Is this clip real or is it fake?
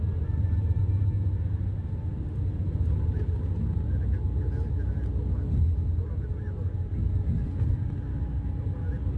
real